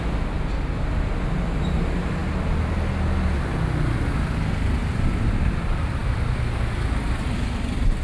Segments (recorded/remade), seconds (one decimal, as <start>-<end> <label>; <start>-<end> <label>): 0.0-8.0 recorded